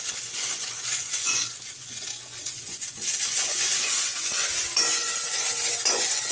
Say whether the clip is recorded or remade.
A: remade